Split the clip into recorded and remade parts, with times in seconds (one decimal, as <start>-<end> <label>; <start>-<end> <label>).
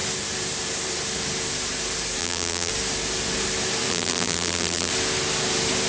0.0-2.2 recorded; 2.2-2.7 remade; 2.7-3.9 recorded; 3.9-4.9 remade; 4.9-5.9 recorded